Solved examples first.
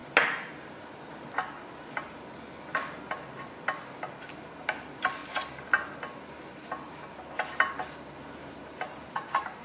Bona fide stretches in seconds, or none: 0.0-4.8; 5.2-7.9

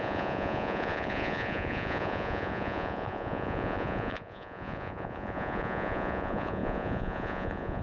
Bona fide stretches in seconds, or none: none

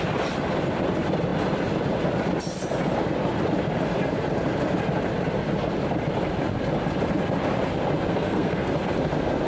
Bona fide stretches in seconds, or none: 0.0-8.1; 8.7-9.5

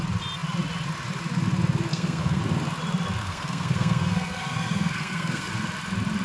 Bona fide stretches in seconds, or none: 0.0-1.9; 2.4-3.2; 5.5-6.2